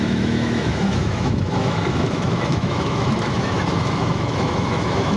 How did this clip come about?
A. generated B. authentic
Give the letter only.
A